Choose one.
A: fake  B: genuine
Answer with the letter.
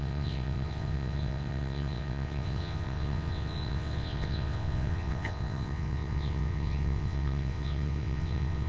A